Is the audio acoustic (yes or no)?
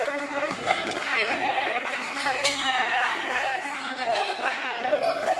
no